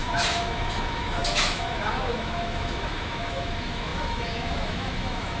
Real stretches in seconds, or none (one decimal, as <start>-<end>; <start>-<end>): none